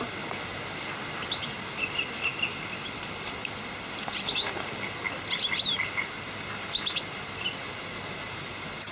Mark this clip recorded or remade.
recorded